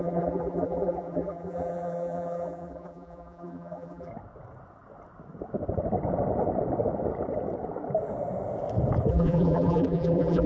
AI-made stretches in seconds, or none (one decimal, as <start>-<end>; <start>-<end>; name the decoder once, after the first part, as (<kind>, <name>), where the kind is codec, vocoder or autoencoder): 0.0-4.1 (vocoder, BigVGAN v2); 9.1-10.5